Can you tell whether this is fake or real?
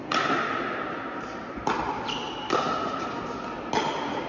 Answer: real